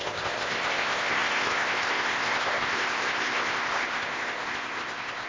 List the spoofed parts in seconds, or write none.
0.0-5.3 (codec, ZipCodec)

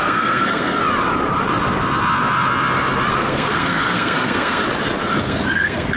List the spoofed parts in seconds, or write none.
0.0-0.8 (codec, SNAC); 3.1-4.6; 5.2-6.0